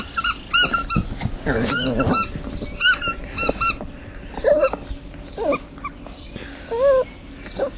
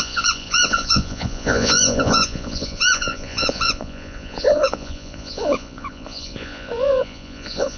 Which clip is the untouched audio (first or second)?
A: first